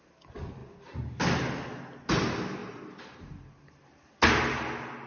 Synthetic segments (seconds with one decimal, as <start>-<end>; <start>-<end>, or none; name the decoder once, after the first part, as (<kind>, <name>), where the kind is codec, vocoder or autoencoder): none